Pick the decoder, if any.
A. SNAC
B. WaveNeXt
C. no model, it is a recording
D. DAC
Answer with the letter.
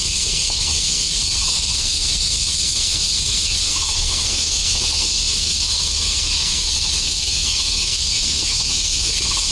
A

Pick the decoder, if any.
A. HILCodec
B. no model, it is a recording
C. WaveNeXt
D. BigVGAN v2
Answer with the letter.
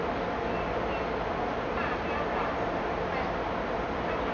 B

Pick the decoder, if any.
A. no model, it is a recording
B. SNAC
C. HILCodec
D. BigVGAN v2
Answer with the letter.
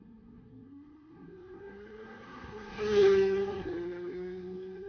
B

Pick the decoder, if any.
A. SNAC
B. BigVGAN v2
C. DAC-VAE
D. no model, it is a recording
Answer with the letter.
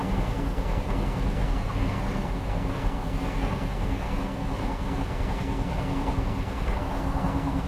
A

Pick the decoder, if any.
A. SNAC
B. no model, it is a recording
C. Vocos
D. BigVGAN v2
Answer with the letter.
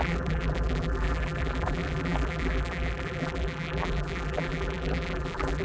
D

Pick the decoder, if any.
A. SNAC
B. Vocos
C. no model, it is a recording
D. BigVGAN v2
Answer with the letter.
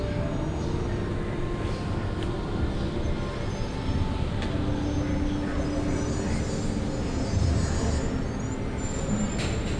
C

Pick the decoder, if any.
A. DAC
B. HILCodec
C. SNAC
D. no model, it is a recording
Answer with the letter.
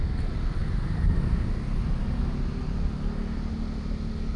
D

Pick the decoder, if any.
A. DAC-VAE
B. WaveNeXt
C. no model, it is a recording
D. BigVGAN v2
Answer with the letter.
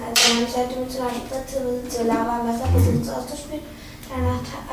C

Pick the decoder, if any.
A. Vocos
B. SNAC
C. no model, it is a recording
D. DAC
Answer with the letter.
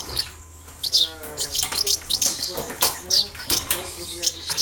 D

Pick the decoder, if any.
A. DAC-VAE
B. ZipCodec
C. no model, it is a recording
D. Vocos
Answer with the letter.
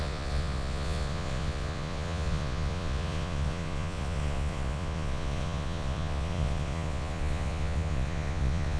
D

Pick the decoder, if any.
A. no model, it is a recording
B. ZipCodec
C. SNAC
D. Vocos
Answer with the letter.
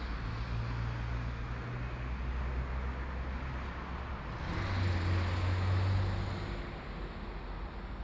A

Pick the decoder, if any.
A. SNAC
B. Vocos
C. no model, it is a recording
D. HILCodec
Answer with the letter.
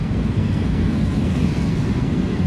A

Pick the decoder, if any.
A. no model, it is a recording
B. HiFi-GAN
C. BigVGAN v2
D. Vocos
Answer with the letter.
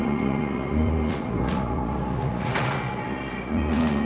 D